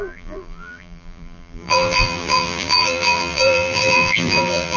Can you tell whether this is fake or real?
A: fake